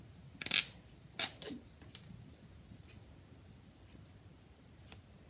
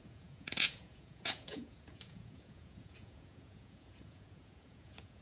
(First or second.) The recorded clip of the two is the first